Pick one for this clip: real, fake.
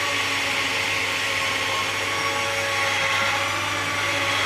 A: real